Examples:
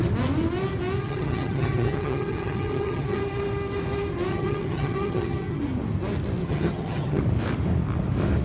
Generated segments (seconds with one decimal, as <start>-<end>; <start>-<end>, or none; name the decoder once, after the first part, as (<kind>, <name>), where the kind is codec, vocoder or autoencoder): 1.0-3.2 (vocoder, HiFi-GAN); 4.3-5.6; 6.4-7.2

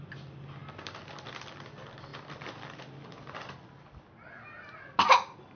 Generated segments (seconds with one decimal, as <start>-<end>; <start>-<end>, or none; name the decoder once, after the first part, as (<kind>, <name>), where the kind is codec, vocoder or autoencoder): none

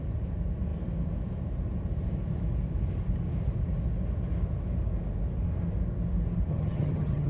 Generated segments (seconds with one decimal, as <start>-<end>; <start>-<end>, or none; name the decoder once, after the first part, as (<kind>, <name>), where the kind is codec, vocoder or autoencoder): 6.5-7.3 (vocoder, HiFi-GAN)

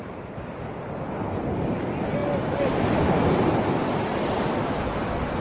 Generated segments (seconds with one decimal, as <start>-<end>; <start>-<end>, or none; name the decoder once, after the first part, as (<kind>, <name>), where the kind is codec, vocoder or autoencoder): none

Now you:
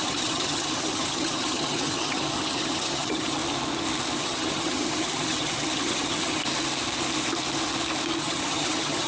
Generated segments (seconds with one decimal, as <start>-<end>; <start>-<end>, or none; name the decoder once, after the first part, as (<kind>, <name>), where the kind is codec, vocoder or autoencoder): 0.0-3.4 (vocoder, HiFi-GAN); 4.2-6.4; 8.2-9.1

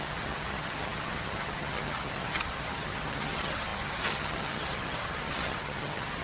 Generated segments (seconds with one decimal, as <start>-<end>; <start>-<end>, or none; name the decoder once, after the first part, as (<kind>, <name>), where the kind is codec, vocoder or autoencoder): 0.0-6.2 (vocoder, HiFi-GAN)

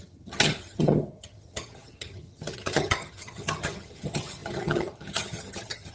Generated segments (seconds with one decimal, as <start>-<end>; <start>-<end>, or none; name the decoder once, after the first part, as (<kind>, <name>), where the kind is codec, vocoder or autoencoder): 0.0-5.9 (vocoder, HiFi-GAN)

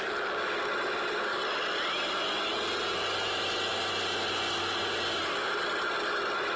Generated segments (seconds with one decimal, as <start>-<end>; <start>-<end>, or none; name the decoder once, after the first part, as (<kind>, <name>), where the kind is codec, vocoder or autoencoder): none